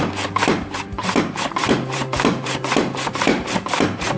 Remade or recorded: remade